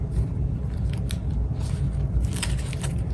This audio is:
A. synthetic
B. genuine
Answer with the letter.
B